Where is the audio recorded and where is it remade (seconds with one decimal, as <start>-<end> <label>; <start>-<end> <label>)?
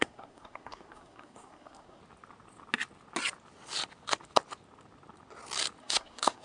0.0-2.0 remade; 2.0-5.8 recorded; 5.8-6.4 remade